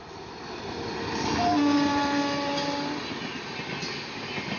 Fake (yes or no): no